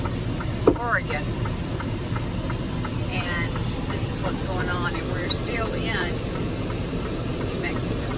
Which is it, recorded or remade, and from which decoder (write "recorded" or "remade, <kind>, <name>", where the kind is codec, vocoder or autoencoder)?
remade, vocoder, BigVGAN v2